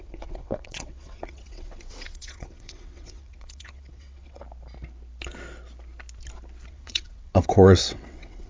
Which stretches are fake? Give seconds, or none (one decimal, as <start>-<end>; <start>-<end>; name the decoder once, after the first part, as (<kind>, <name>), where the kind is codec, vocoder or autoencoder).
0.0-4.4 (vocoder, WaveNeXt); 6.7-8.5